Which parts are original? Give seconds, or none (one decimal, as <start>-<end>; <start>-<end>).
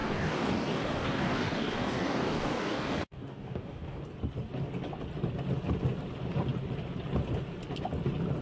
4.0-8.4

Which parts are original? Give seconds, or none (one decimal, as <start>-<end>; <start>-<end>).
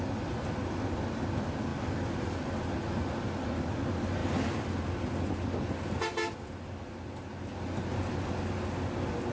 0.0-9.3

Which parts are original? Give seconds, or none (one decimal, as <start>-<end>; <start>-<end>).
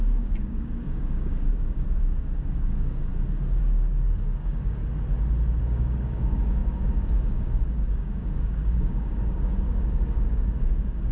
3.1-3.6; 4.8-5.6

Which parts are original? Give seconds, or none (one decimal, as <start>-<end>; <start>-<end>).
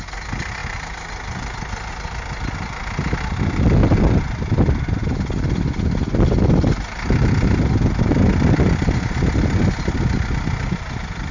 0.0-11.3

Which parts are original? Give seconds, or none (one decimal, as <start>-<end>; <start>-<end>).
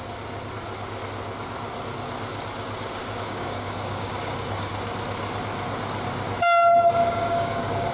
0.0-3.0; 4.7-6.7